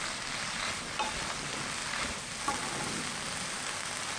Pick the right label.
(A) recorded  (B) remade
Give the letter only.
A